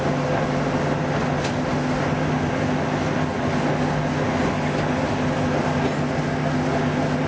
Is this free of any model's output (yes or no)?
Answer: yes